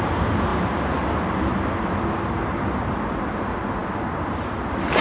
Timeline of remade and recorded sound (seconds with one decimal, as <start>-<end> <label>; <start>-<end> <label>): 0.0-5.0 recorded